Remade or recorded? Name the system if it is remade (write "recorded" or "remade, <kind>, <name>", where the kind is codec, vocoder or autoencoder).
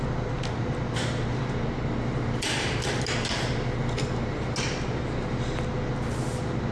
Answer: recorded